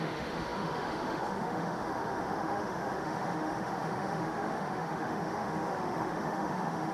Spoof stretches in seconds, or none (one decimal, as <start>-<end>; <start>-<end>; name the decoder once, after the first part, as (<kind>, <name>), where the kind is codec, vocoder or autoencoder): 0.0-6.9 (autoencoder, DAC-VAE)